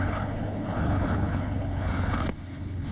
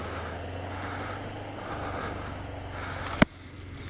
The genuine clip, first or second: second